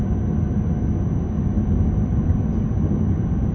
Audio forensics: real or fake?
real